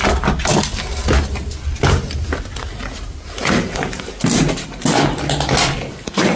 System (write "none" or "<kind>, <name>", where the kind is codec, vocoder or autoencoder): none